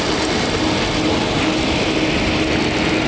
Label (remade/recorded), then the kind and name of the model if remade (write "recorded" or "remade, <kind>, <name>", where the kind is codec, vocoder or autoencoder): recorded